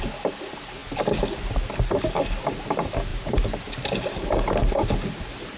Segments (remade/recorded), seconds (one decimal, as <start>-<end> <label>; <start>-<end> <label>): 0.0-5.6 recorded